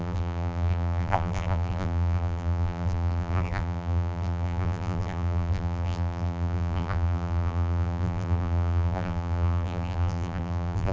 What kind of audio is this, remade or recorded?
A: remade